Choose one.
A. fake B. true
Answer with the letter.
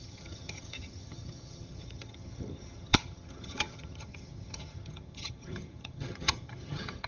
A